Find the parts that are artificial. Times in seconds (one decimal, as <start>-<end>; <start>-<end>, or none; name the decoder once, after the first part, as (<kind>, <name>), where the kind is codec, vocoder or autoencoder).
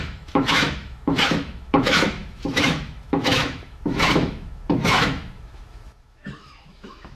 0.0-7.1 (autoencoder, DAC-VAE)